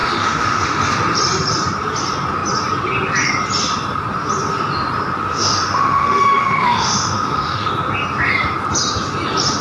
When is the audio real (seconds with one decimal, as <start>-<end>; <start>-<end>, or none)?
0.8-5.3; 7.7-9.6